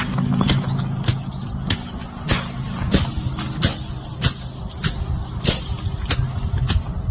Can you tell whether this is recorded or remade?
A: recorded